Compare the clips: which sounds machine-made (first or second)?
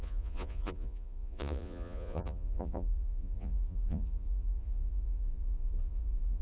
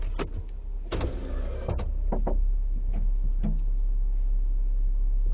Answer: first